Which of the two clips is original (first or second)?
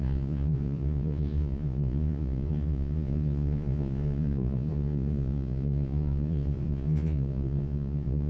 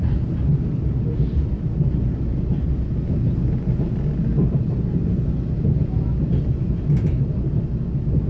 second